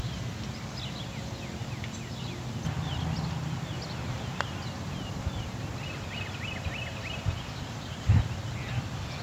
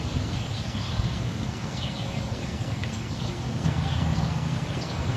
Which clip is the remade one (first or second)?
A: second